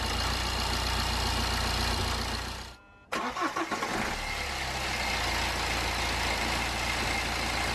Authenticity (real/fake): real